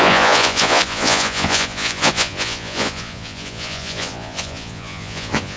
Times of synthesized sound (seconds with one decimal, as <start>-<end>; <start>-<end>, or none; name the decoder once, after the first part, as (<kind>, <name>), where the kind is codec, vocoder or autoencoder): 0.0-5.6 (vocoder, Vocos)